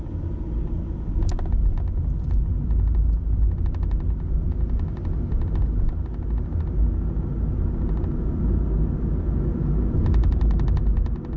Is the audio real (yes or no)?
yes